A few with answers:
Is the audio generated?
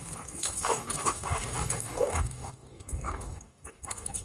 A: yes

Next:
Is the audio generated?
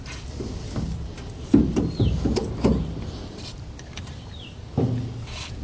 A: no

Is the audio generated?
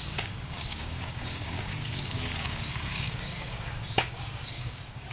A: yes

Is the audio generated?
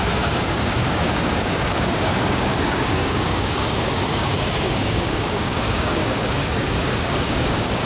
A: yes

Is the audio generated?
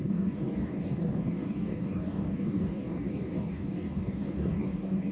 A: yes